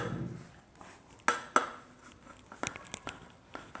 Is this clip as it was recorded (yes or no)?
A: yes